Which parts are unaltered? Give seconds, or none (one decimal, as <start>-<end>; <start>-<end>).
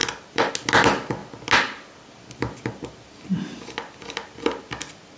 0.5-5.2